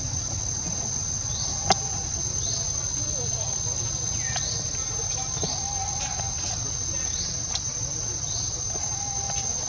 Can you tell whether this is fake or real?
real